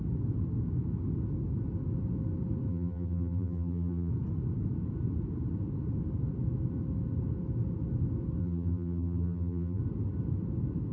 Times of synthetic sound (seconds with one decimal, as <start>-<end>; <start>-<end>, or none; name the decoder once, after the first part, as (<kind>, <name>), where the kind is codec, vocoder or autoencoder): 2.7-4.1 (vocoder, BigVGAN v2); 8.4-9.8